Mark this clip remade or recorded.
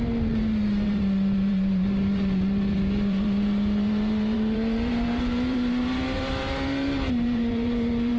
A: remade